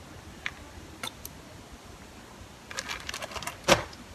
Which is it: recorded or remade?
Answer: recorded